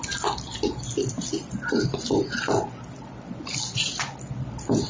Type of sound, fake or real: real